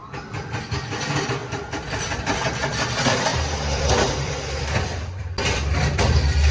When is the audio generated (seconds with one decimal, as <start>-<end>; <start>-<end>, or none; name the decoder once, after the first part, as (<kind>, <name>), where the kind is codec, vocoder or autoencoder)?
3.3-6.5 (vocoder, BigVGAN v2)